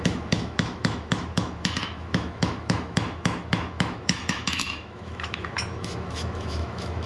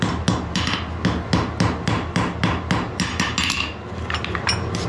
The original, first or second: second